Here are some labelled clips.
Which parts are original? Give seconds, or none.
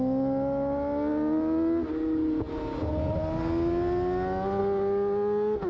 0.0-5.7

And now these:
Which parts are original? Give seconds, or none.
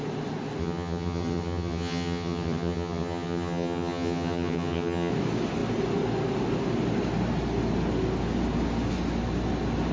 0.0-0.6; 5.1-9.9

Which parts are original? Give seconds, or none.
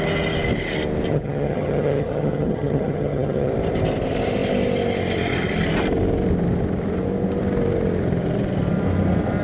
0.0-1.1; 3.5-9.4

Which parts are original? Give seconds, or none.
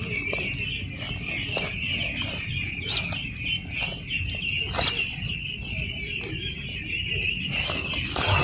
0.0-8.4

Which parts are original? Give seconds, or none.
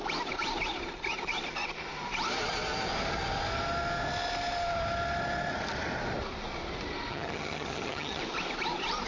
0.0-7.1; 8.2-9.1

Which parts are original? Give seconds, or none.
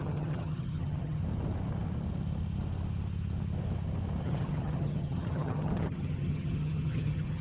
1.2-4.2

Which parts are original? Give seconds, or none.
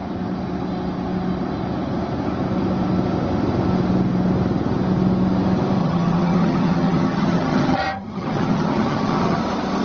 0.0-5.8; 9.4-9.8